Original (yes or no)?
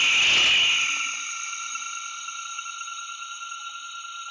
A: yes